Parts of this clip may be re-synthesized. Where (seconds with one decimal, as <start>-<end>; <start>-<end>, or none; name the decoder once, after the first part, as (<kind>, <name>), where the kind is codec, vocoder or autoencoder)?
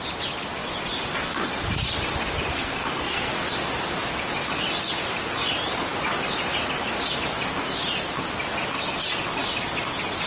2.5-3.3 (codec, SNAC)